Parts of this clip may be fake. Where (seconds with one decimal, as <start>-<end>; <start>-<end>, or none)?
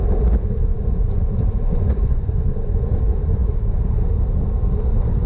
0.7-1.2; 1.6-2.9